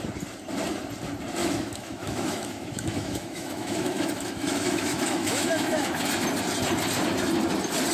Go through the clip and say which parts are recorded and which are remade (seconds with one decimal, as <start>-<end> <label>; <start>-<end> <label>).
0.0-1.4 recorded; 1.4-6.0 remade; 6.0-7.9 recorded